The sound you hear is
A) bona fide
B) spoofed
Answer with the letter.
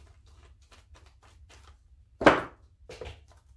A